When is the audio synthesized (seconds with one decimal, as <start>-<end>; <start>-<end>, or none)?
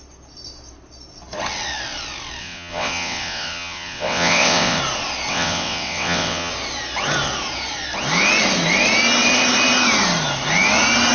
2.4-4.8; 5.3-6.5